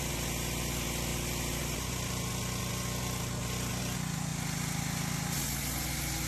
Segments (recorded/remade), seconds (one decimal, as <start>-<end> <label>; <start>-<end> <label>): 0.0-6.3 recorded